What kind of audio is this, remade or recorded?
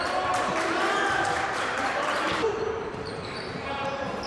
remade